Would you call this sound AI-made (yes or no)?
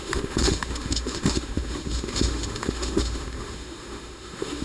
yes